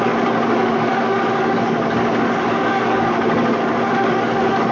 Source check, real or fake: fake